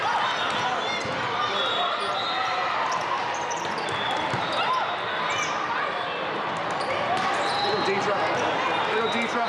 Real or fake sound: real